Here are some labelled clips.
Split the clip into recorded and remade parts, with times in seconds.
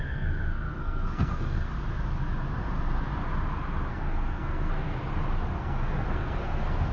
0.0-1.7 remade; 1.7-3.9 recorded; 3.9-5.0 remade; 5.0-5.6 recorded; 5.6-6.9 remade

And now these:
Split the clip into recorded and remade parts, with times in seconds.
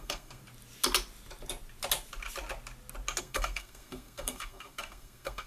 0.0-0.4 remade; 0.4-3.2 recorded; 3.2-5.5 remade